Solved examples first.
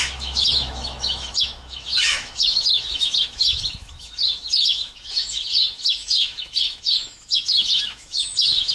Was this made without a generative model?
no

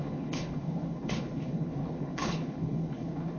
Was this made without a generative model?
no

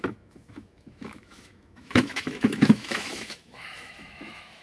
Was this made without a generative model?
no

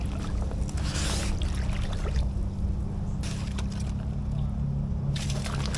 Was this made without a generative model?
yes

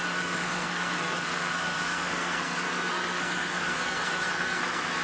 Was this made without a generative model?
no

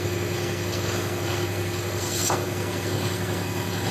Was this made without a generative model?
no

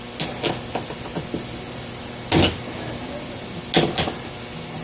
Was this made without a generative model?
yes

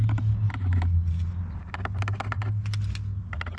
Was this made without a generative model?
yes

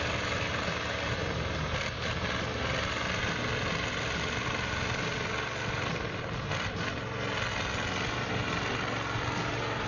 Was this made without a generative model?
yes